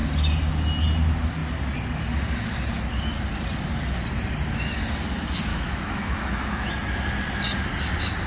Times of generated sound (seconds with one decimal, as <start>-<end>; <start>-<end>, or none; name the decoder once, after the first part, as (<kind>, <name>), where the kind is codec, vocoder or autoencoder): 5.5-6.7 (autoencoder, DAC-VAE)

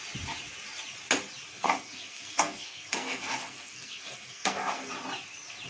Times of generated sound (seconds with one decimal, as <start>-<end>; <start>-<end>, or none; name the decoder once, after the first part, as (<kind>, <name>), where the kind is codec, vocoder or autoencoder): 1.5-4.9 (codec, SNAC)

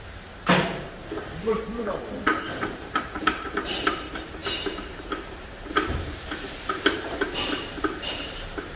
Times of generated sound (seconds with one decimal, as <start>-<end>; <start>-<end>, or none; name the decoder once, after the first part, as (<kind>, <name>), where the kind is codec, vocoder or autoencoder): 0.0-8.8 (vocoder, BigVGAN v2)

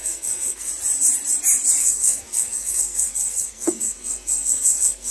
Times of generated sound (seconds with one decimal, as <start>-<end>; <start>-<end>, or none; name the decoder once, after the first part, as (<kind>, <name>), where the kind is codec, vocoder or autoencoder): 0.0-0.7 (codec, SNAC); 1.8-5.1

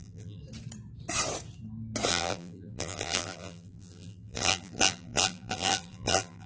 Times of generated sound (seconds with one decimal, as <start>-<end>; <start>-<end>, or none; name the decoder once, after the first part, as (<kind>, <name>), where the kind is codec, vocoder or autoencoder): 0.0-0.4 (vocoder, BigVGAN v2); 2.1-6.5

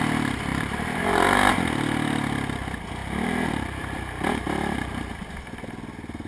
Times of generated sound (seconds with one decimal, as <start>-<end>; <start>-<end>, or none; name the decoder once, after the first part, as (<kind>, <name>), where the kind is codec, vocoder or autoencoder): 0.5-1.5 (vocoder, BigVGAN v2); 3.0-5.0